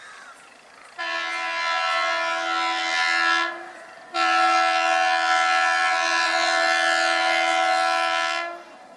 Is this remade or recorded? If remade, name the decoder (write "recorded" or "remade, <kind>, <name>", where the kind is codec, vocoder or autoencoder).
recorded